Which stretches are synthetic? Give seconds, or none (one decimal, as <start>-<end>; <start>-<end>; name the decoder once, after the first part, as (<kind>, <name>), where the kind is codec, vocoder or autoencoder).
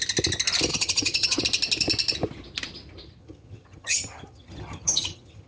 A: 0.7-1.4 (vocoder, HiFi-GAN); 3.2-5.5